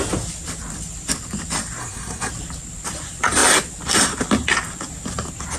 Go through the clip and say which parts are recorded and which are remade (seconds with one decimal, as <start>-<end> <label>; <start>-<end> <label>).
0.0-1.8 recorded; 1.8-2.3 remade; 2.3-5.6 recorded